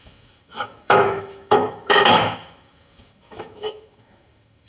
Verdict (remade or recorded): remade